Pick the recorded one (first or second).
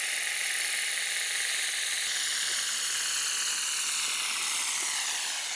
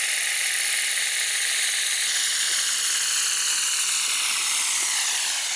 first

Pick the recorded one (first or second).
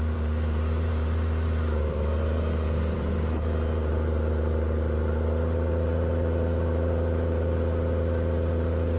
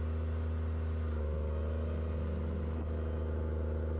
second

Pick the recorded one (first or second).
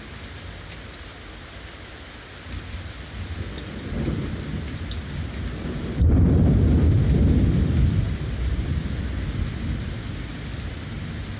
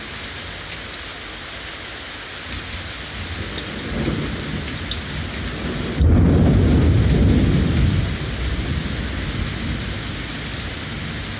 second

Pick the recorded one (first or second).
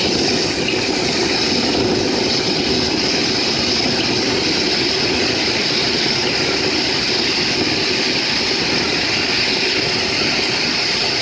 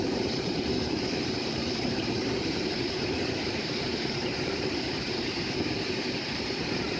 first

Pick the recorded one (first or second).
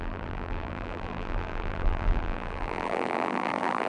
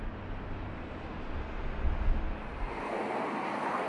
second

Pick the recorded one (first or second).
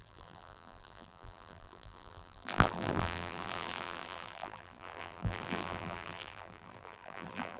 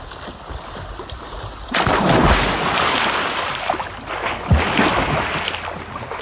second